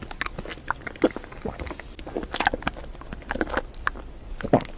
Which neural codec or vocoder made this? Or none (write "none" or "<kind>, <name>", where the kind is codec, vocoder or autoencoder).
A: none